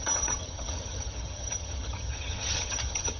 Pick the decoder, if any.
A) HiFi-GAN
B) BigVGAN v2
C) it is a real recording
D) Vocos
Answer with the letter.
A